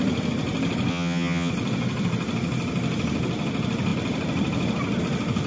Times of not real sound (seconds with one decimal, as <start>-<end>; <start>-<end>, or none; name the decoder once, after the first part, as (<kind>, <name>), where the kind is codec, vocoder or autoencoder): 0.9-1.5 (vocoder, HiFi-GAN)